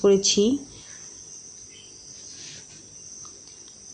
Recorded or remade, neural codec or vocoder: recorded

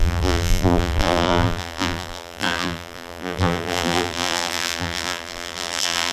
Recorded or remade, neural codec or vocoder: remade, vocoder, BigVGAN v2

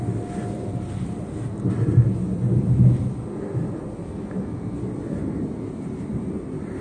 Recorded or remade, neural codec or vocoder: recorded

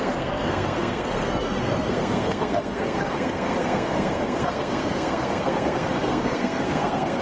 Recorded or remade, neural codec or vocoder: remade, codec, SNAC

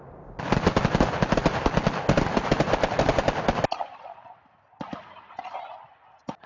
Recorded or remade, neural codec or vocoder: recorded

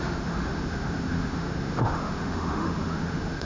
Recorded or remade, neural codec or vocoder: remade, autoencoder, DAC-VAE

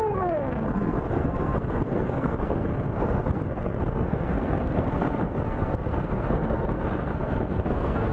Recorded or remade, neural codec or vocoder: remade, codec, SNAC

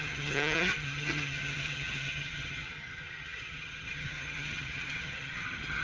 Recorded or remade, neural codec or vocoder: remade, vocoder, HiFi-GAN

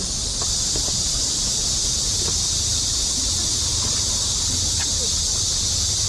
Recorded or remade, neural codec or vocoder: remade, vocoder, BigVGAN v2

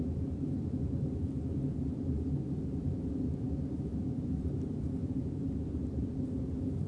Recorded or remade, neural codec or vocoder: remade, vocoder, BigVGAN v2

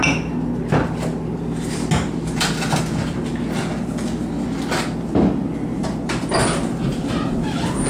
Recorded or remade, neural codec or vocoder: recorded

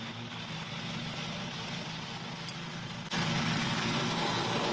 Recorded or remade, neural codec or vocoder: recorded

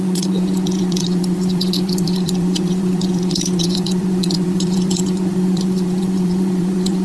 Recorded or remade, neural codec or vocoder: remade, vocoder, Vocos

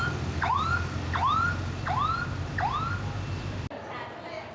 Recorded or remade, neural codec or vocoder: recorded